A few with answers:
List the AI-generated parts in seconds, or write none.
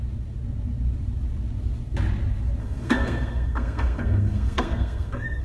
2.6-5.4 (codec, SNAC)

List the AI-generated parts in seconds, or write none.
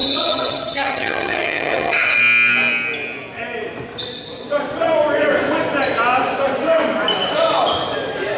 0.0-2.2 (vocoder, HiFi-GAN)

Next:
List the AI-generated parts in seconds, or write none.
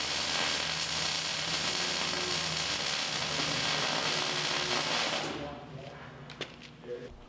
1.3-1.8 (vocoder, BigVGAN v2); 5.0-6.1